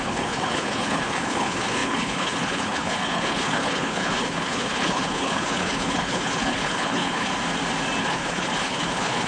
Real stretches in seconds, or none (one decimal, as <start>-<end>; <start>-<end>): 7.3-8.0